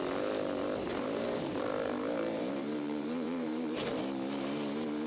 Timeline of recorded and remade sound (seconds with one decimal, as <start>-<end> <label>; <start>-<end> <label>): 0.0-0.9 recorded; 0.9-4.0 remade; 4.0-5.1 recorded